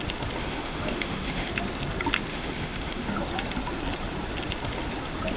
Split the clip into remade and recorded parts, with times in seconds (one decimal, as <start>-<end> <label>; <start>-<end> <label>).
0.0-0.4 recorded; 0.4-1.5 remade; 1.5-2.3 recorded; 2.3-3.1 remade; 3.1-5.4 recorded